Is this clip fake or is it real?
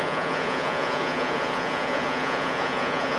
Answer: fake